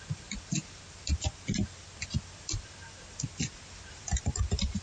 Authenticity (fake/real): real